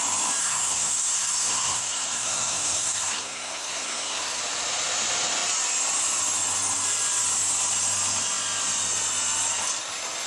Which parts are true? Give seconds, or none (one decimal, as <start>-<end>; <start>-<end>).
0.0-0.4; 4.4-10.3